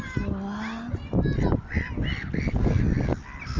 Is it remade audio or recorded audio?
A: recorded